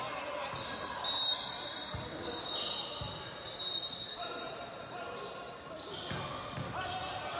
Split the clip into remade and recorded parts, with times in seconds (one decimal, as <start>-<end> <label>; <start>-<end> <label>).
0.0-1.3 recorded; 1.3-3.0 remade; 3.0-7.4 recorded